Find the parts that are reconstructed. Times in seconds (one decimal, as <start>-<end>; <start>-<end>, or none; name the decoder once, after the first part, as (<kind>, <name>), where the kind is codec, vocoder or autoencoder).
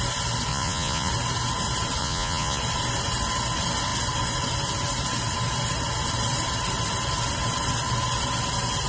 0.5-1.1 (vocoder, Vocos); 2.0-2.6